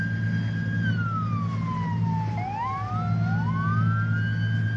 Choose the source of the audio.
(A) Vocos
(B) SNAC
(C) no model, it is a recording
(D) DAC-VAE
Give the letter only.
C